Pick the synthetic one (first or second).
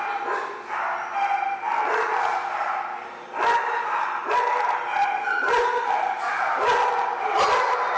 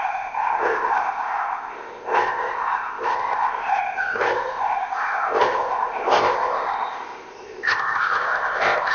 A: second